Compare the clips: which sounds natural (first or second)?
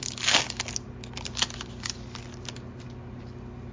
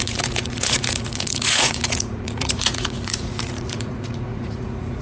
first